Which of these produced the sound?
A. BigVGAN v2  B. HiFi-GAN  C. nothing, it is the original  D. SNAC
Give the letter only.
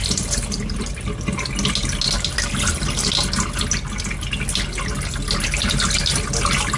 C